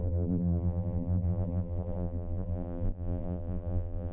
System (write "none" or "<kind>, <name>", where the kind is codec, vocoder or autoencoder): vocoder, BigVGAN v2